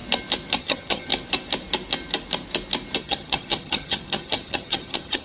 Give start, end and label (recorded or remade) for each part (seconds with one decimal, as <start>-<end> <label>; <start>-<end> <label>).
0.0-0.6 recorded; 0.6-1.1 remade; 1.1-3.0 recorded; 3.0-5.2 remade